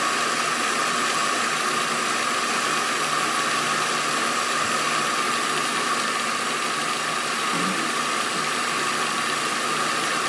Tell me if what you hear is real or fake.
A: real